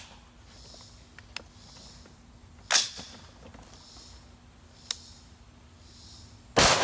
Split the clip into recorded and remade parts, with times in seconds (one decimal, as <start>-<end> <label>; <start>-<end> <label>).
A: 0.0-6.8 recorded